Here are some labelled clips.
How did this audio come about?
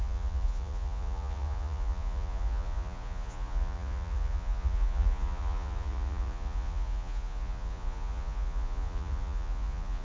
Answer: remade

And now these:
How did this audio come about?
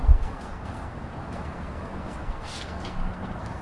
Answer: remade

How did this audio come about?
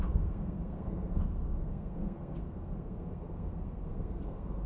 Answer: remade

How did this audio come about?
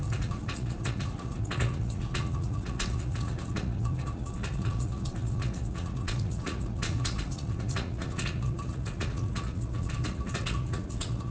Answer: remade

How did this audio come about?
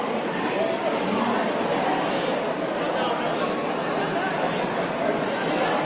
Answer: recorded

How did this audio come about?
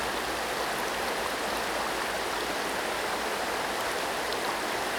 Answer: recorded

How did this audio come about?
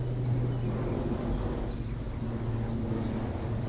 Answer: recorded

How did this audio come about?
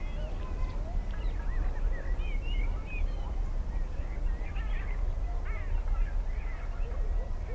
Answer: recorded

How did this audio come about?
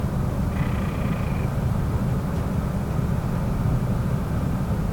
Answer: recorded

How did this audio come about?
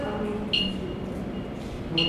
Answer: recorded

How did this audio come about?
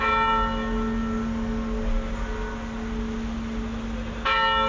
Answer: recorded